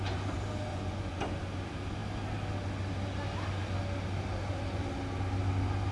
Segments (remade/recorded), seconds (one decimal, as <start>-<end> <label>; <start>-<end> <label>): 0.0-0.7 recorded; 0.7-1.2 remade; 1.2-5.9 recorded